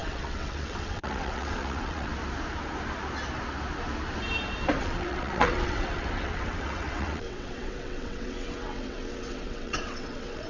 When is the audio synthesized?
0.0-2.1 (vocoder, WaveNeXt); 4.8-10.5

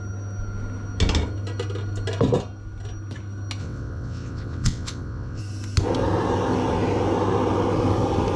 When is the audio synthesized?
3.6-5.4 (vocoder, WaveNeXt)

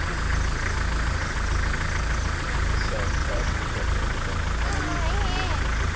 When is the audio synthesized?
3.2-3.8 (vocoder, WaveNeXt)

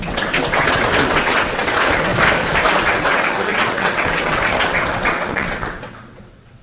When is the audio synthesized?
0.0-2.1 (vocoder, WaveNeXt); 2.8-6.6

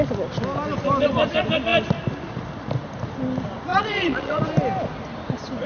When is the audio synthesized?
3.7-4.4 (vocoder, WaveNeXt)

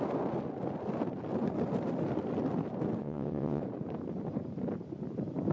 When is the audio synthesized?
3.0-3.6 (vocoder, WaveNeXt)

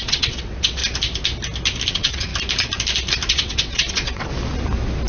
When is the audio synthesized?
0.0-0.8 (vocoder, WaveNeXt); 1.9-2.3; 3.3-4.3

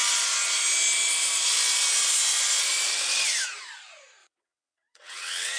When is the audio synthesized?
4.2-5.6 (vocoder, WaveNeXt)